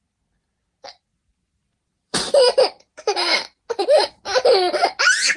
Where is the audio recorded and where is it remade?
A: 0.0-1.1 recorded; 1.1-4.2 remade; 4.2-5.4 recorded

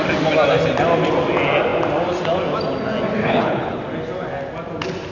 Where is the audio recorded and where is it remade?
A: 0.0-3.2 recorded; 3.2-3.8 remade; 3.8-5.1 recorded